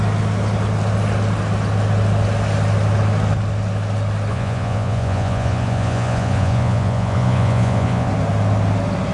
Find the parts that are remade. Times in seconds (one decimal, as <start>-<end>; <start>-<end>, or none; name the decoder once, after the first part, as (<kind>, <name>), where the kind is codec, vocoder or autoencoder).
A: 4.3-8.1 (vocoder, Vocos)